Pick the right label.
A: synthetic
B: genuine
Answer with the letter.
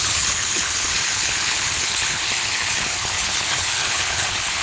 A